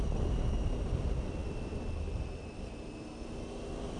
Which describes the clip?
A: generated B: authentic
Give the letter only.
B